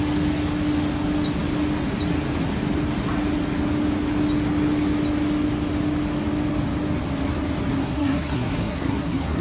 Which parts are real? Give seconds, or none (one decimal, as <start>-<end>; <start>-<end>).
0.0-7.8